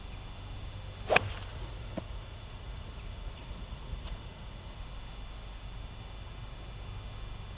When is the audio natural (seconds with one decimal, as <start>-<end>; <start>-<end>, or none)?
0.0-1.5; 4.8-7.6